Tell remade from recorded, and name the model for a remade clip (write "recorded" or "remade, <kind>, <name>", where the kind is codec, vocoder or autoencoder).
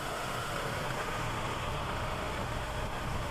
remade, autoencoder, DAC-VAE